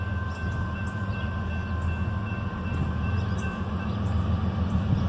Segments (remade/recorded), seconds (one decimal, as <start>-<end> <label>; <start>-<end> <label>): 0.0-0.4 recorded; 0.4-1.3 remade; 1.3-2.3 recorded; 2.3-4.4 remade; 4.4-5.1 recorded